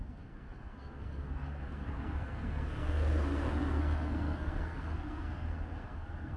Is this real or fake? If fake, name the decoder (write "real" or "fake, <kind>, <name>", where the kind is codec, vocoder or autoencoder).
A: fake, codec, SNAC